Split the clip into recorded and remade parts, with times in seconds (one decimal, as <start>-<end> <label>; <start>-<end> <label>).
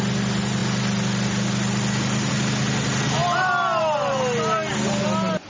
0.0-5.5 recorded